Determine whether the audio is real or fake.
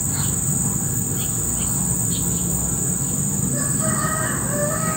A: real